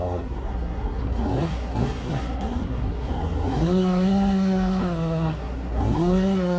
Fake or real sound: fake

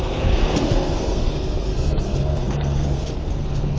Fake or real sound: fake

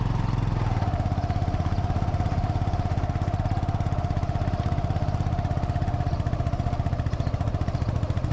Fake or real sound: real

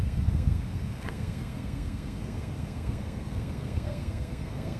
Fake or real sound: fake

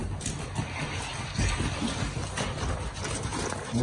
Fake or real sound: real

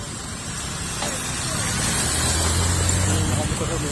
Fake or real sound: real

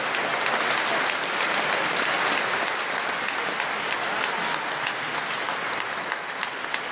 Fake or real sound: real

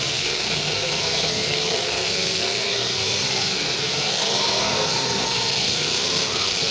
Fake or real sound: fake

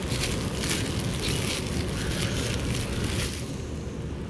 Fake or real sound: real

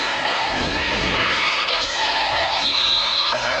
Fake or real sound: fake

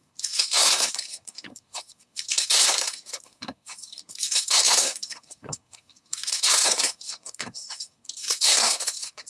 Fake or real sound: fake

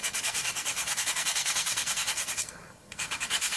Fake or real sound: fake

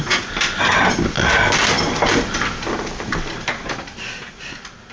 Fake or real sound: real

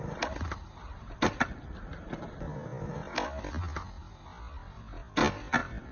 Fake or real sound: real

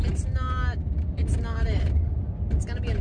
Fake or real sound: real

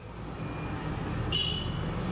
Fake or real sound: real